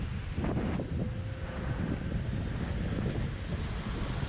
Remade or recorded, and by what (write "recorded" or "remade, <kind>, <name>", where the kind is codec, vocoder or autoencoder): recorded